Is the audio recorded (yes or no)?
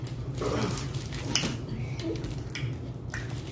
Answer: yes